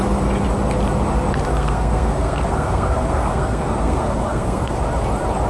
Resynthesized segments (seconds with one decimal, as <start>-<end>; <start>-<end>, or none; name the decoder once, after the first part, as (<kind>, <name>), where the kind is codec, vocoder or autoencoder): 1.5-4.8 (codec, SNAC)